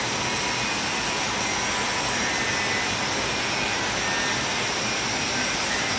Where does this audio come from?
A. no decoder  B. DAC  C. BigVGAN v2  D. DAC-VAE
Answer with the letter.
A